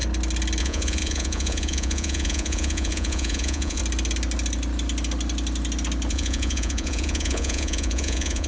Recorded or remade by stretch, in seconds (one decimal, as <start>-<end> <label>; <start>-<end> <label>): 0.0-0.6 recorded; 0.6-3.8 remade; 3.8-6.1 recorded; 6.1-8.5 remade